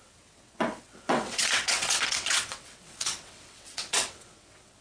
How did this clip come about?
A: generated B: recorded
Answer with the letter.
A